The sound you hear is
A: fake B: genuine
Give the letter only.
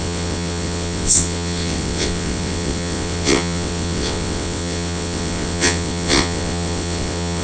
A